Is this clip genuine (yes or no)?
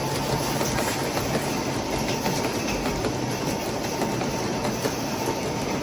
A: yes